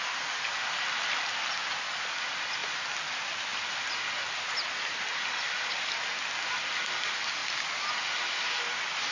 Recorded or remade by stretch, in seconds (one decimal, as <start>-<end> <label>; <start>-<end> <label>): 0.0-9.1 recorded